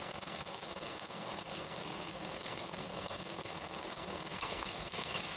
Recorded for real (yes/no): no